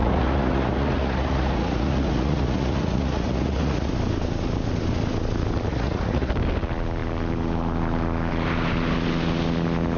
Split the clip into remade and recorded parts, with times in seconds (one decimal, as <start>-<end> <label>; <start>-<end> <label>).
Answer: 0.0-3.9 remade; 3.9-5.7 recorded; 5.7-6.3 remade; 6.3-10.0 recorded

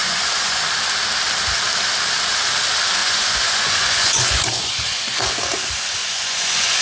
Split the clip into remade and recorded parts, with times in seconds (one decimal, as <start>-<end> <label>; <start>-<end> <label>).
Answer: 0.0-0.6 remade; 0.6-3.0 recorded; 3.0-5.4 remade; 5.4-6.0 recorded; 6.0-6.8 remade

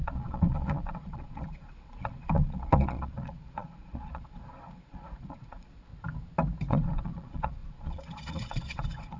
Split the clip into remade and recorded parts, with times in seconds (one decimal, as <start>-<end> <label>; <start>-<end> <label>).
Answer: 0.0-5.9 remade; 5.9-6.7 recorded; 6.7-9.2 remade